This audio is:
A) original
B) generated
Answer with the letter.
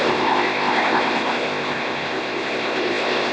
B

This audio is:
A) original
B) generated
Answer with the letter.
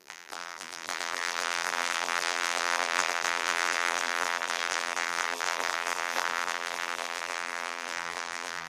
B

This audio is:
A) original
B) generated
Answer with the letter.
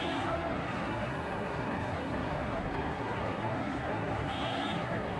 B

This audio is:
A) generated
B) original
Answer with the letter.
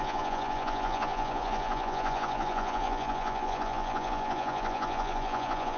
A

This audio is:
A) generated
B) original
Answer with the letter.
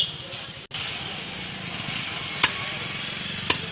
B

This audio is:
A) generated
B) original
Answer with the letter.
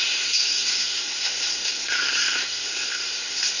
A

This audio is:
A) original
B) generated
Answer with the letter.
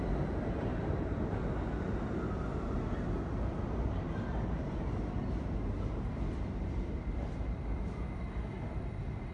A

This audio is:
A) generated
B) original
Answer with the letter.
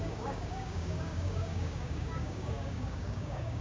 A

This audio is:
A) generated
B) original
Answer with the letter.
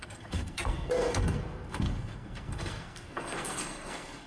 A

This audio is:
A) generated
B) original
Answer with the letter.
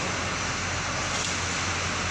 B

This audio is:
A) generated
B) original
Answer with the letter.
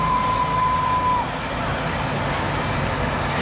B